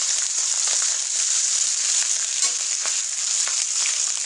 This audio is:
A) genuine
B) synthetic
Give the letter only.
B